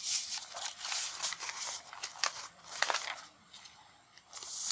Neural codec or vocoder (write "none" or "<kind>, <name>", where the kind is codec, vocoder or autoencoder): none